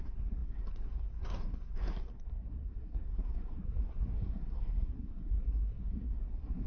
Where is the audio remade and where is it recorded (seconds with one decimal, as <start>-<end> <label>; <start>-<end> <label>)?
0.0-6.7 remade